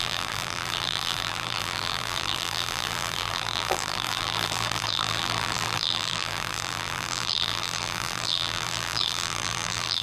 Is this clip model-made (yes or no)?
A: yes